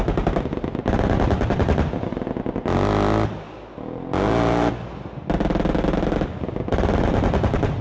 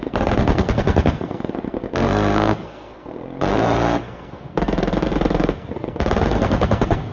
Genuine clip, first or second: first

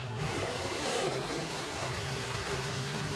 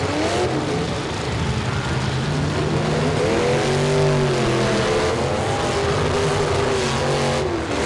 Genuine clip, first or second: second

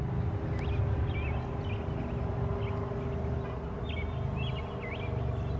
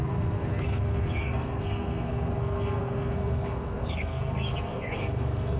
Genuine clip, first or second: first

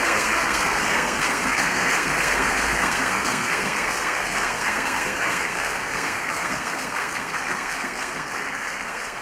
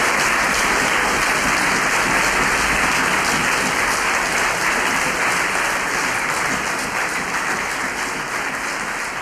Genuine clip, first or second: second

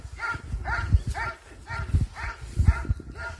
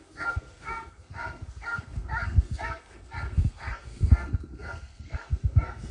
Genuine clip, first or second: first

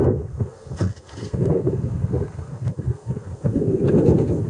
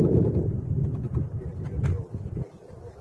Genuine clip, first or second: second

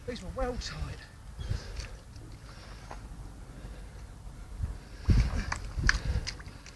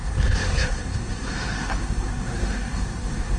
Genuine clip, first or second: first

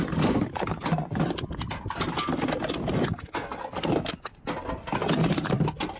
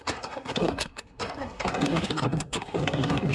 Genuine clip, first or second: first